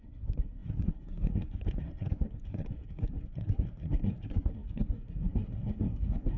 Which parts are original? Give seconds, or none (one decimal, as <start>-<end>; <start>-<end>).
none